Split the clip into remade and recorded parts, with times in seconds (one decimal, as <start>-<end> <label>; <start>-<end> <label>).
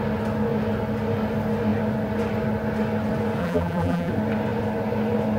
0.0-3.4 recorded; 3.4-4.1 remade; 4.1-5.4 recorded